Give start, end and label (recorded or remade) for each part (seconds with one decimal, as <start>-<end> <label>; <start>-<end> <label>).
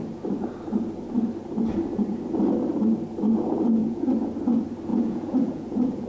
0.0-3.8 recorded; 3.8-4.3 remade; 4.3-4.9 recorded; 4.9-6.1 remade